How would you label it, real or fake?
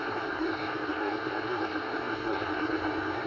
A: fake